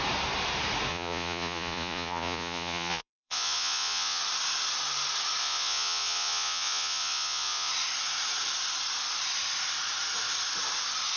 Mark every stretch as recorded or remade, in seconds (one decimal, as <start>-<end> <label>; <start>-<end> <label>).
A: 0.0-0.9 recorded; 0.9-4.2 remade; 4.2-5.4 recorded; 5.4-7.7 remade; 7.7-11.2 recorded